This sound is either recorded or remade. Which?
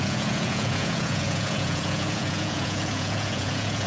remade